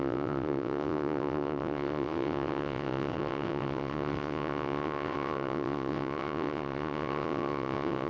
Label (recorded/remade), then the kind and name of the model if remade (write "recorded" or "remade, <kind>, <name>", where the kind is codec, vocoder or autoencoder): remade, vocoder, WaveNeXt